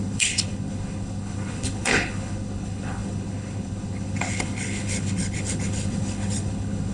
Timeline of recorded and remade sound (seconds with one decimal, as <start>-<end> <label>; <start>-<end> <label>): 0.0-6.9 remade